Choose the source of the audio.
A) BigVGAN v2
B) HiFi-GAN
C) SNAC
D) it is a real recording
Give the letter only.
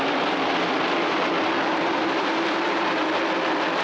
A